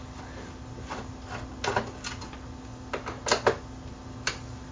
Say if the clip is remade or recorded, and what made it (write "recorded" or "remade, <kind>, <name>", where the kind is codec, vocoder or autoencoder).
recorded